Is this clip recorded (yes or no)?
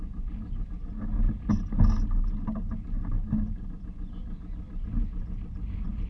yes